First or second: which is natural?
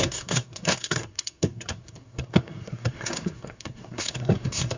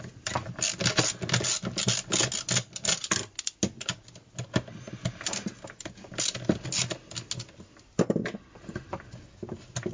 second